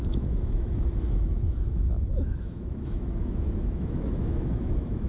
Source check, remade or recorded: remade